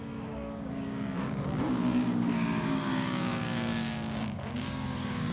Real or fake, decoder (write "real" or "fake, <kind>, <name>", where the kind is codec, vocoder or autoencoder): fake, codec, DAC